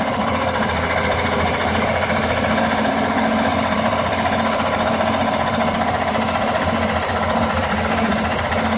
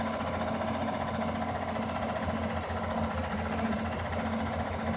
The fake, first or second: first